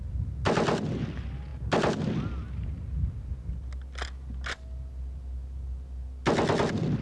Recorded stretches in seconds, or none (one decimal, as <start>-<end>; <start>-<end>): 0.0-7.0